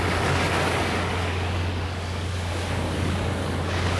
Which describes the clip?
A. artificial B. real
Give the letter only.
A